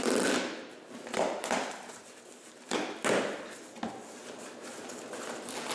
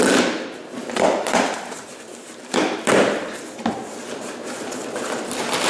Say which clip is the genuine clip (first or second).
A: first